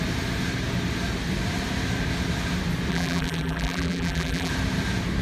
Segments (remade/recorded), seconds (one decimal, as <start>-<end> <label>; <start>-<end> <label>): 0.0-2.9 recorded; 2.9-4.5 remade; 4.5-5.2 recorded